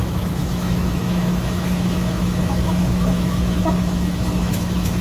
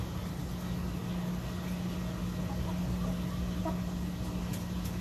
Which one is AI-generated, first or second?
first